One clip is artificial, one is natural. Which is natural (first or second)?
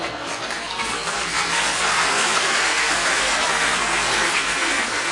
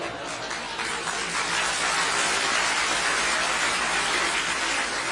second